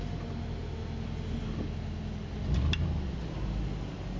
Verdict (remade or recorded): recorded